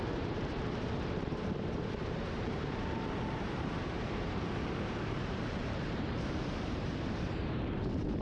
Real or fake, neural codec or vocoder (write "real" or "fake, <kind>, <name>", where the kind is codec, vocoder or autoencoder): fake, vocoder, BigVGAN v2